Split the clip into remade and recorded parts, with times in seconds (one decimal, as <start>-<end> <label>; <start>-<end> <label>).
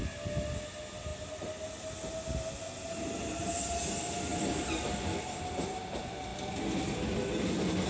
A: 0.0-7.9 recorded